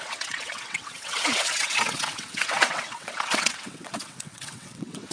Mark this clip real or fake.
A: fake